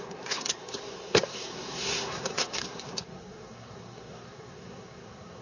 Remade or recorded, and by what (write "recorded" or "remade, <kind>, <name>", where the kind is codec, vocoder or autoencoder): remade, codec, SNAC